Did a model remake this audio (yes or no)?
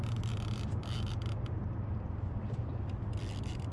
yes